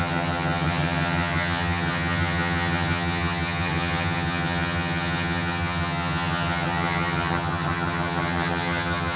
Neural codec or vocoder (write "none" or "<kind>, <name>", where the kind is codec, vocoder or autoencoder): vocoder, HiFi-GAN